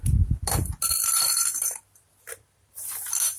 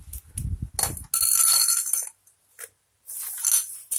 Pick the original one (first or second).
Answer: second